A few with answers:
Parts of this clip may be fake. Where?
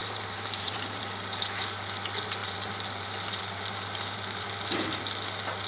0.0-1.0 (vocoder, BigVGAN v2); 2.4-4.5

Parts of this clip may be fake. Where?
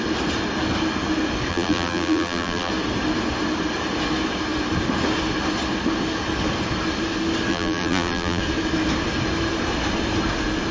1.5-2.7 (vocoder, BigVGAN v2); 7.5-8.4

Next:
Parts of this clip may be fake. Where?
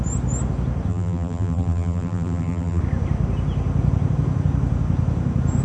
0.9-2.8 (vocoder, BigVGAN v2)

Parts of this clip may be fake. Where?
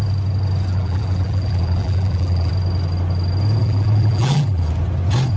0.7-2.5 (vocoder, BigVGAN v2); 3.6-4.6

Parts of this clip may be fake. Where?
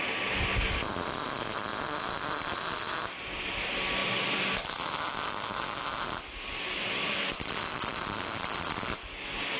1.7-2.9 (vocoder, BigVGAN v2); 4.0-8.6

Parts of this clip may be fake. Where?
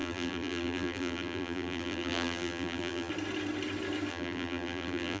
0.0-3.1 (vocoder, BigVGAN v2); 4.1-5.2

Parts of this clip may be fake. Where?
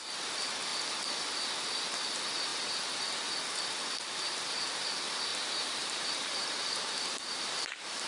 2.5-3.4 (vocoder, BigVGAN v2); 5.3-8.1